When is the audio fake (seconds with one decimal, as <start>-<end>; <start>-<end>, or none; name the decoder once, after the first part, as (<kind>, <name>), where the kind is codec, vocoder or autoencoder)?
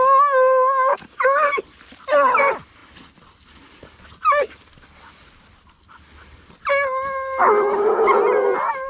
0.9-1.6 (codec, DAC)